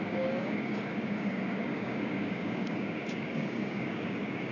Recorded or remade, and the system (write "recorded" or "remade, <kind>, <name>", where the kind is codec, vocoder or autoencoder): remade, codec, DAC